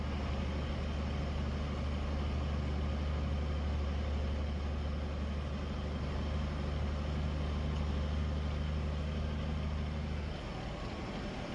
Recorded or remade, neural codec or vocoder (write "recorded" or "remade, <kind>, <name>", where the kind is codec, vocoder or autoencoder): recorded